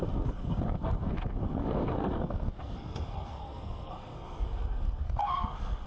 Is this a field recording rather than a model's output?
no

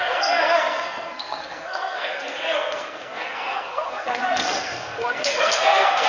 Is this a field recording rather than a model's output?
no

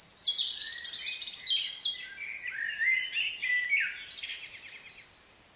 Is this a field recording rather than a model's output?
yes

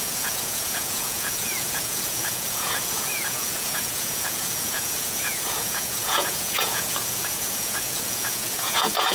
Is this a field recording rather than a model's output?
no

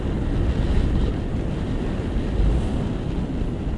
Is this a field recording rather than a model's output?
yes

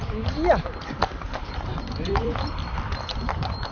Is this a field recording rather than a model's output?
no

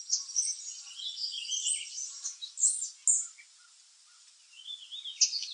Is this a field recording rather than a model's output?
yes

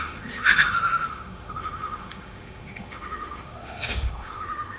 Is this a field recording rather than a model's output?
no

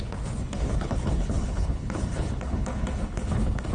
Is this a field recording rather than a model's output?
no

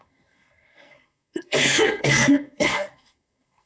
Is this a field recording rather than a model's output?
no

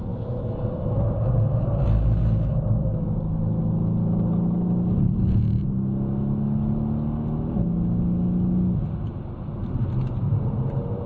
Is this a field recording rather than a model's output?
yes